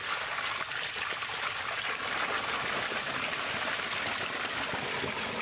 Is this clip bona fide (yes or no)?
yes